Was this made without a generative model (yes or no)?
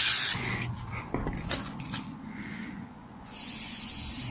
no